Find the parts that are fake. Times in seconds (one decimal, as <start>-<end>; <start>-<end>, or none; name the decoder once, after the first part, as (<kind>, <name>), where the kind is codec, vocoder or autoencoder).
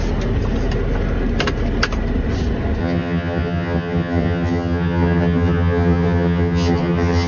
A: 2.8-7.3 (vocoder, HiFi-GAN)